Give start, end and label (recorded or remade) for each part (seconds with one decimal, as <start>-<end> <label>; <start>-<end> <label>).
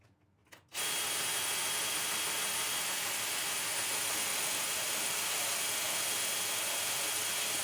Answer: 0.0-4.3 recorded; 4.3-5.6 remade; 5.6-7.6 recorded